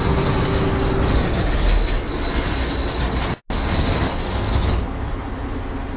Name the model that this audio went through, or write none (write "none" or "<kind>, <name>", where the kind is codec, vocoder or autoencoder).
none